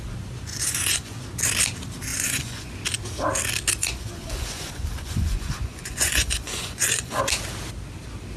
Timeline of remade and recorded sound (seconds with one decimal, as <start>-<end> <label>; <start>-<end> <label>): 0.0-0.5 recorded; 0.5-1.2 remade; 1.2-2.1 recorded; 2.1-2.7 remade; 2.7-3.8 recorded; 3.8-7.2 remade; 7.2-8.4 recorded